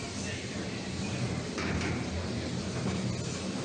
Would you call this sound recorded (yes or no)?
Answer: yes